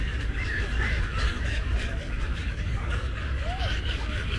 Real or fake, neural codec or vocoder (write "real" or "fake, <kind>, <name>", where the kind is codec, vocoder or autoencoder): fake, codec, DAC